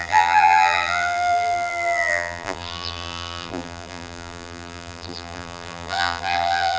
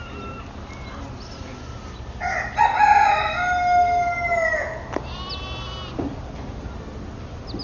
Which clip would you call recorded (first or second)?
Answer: second